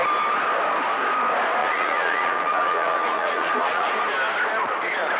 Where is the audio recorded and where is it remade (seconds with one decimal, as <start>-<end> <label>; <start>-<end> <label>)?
0.0-1.6 recorded; 1.6-3.9 remade; 3.9-5.2 recorded